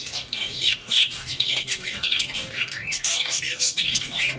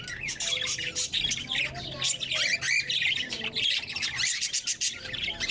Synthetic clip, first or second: first